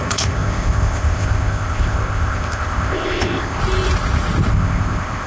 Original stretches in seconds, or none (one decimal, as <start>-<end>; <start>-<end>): 3.6-4.5